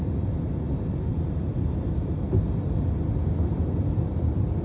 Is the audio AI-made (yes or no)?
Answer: no